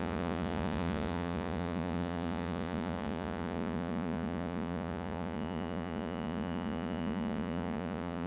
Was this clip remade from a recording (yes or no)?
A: yes